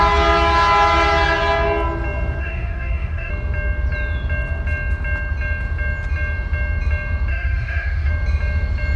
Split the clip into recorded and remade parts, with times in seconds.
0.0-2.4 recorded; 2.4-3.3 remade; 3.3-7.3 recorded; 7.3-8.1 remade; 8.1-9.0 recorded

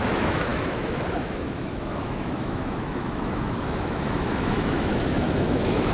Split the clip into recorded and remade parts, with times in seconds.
0.0-5.9 remade

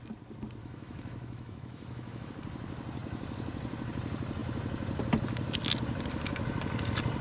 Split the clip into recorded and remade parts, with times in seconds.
0.0-0.6 recorded; 0.6-2.3 remade; 2.3-7.2 recorded